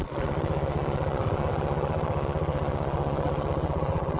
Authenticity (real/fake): fake